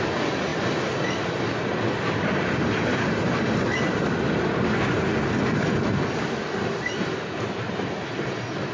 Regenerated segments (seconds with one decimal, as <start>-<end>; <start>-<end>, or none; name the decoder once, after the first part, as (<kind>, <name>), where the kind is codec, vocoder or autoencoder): 0.0-8.7 (vocoder, BigVGAN v2)